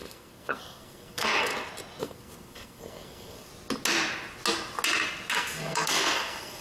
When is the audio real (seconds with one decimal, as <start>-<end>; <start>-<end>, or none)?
1.5-2.0; 3.5-5.3